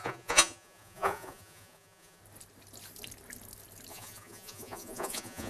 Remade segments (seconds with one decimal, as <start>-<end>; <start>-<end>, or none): 0.0-2.2; 3.9-5.5